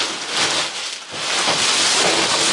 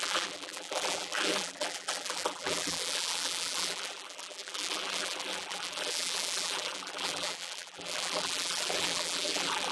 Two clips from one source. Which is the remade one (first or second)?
second